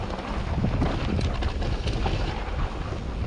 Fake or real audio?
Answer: real